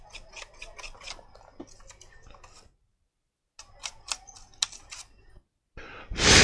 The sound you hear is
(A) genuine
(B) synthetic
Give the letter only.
A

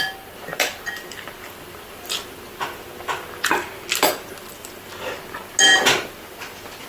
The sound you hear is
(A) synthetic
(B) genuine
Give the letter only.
B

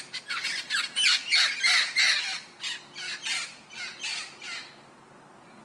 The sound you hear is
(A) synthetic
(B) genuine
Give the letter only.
B